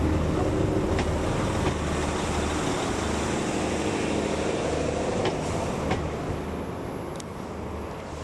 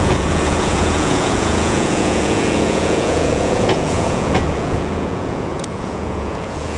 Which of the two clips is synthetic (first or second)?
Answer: second